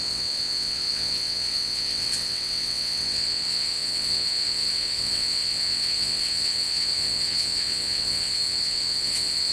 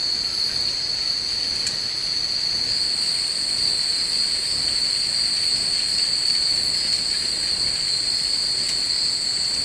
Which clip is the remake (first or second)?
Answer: first